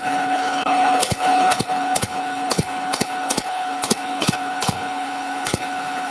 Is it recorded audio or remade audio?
remade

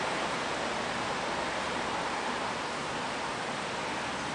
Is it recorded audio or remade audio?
recorded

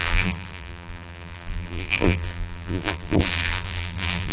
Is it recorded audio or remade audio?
remade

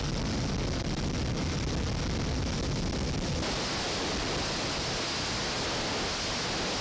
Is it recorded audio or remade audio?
recorded